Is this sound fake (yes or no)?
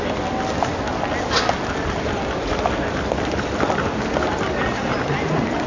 no